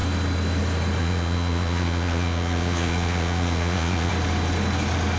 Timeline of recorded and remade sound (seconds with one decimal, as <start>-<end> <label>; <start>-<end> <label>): 0.0-1.0 recorded; 1.0-4.1 remade; 4.1-5.2 recorded